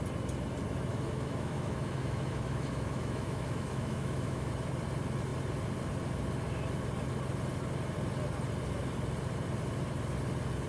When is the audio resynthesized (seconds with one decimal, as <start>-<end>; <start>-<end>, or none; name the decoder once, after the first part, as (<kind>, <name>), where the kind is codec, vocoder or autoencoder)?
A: 0.9-4.5 (autoencoder, DAC-VAE)